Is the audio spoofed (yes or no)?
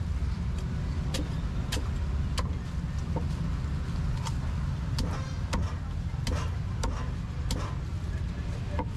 no